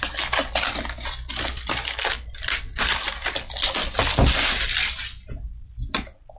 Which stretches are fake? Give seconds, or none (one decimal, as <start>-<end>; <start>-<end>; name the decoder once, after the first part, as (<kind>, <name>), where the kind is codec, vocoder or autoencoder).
1.5-3.9 (vocoder, BigVGAN v2)